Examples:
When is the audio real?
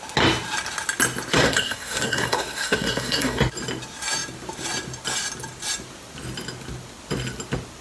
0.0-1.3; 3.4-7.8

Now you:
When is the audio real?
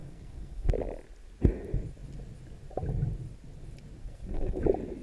0.7-4.0; 4.6-5.0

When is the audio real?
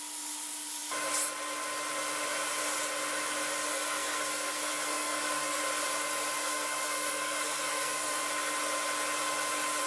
0.0-3.7; 5.6-6.4; 8.2-9.9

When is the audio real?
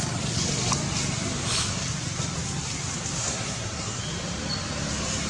0.0-3.2; 4.0-5.3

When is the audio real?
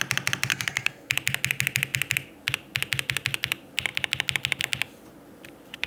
0.0-0.5; 1.1-5.9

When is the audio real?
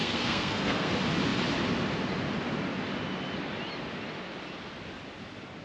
0.9-5.6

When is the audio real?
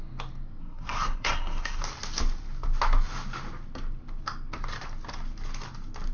0.0-0.6; 1.8-6.1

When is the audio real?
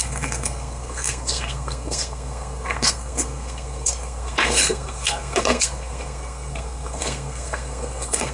none